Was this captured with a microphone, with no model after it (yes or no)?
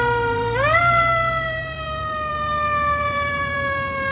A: no